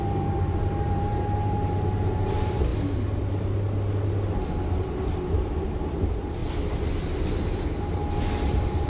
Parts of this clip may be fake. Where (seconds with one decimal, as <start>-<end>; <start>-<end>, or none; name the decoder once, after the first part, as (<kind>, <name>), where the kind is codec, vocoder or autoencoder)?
0.0-2.7 (vocoder, BigVGAN v2); 4.8-6.4; 8.5-8.9